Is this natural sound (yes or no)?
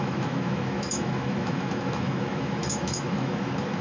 no